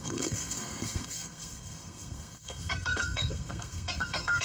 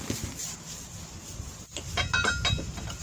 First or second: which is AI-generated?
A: first